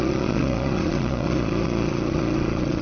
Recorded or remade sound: remade